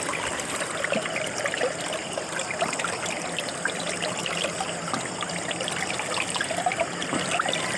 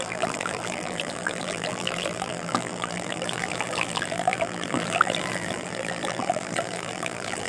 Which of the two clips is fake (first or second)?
second